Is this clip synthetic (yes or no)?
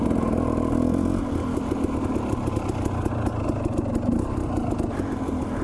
no